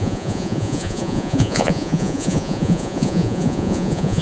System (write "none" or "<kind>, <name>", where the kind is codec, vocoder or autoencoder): vocoder, Vocos